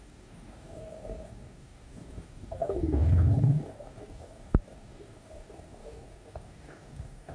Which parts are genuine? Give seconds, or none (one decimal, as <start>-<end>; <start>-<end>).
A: none